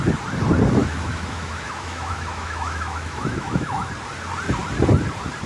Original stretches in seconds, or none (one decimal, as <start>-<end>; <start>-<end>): 0.0-0.8; 3.9-5.5